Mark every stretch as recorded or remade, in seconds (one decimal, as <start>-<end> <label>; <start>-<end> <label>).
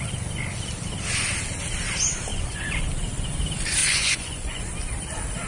0.0-2.3 recorded; 2.3-2.9 remade; 2.9-3.8 recorded; 3.8-4.6 remade; 4.6-5.5 recorded